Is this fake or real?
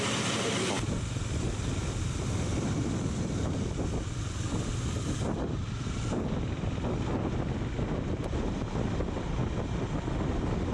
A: real